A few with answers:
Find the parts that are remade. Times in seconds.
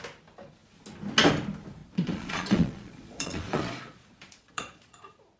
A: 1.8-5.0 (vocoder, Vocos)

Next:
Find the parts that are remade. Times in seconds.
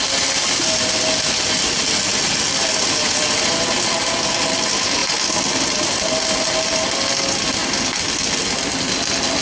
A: none